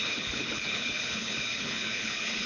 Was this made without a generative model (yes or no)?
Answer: no